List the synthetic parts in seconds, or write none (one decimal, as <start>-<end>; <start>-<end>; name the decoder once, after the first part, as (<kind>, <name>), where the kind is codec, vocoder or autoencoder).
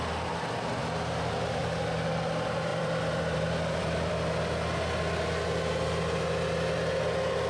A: 0.8-1.6 (vocoder, BigVGAN v2); 2.7-4.1